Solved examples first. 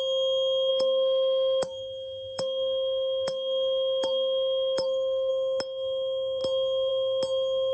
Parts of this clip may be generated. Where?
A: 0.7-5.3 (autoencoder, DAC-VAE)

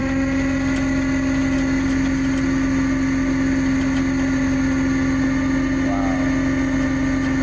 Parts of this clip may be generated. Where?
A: none

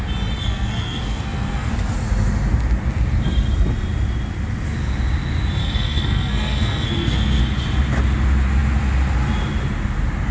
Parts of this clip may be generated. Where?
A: 0.4-1.7 (codec, SNAC); 5.6-7.4